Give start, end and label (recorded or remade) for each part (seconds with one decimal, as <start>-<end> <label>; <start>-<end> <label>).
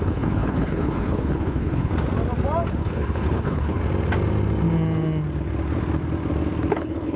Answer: 0.0-1.9 remade; 1.9-2.7 recorded; 2.7-3.8 remade; 3.8-6.7 recorded; 6.7-7.2 remade